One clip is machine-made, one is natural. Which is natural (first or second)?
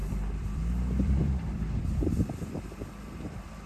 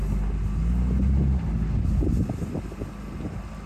second